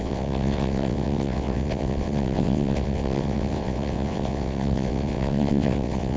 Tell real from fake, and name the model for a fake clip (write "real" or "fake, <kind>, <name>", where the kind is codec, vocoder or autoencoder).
fake, vocoder, WaveNeXt